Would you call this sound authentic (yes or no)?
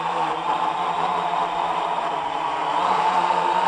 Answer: no